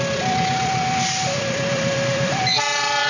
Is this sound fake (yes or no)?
yes